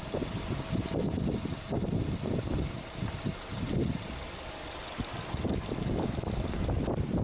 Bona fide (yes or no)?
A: yes